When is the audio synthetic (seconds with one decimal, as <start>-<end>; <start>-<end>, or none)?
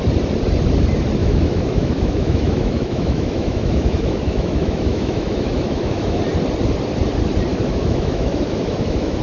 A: 1.2-6.2; 7.5-9.2